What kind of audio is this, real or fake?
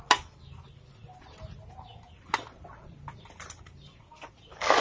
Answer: real